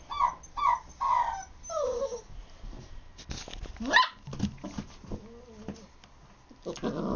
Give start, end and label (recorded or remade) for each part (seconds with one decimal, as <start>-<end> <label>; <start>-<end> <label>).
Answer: 0.0-7.2 recorded